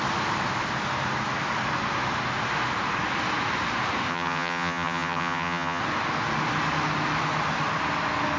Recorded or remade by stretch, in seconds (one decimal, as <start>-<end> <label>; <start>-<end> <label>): 0.0-4.1 recorded; 4.1-5.8 remade; 5.8-8.4 recorded